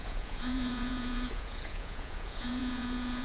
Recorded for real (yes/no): no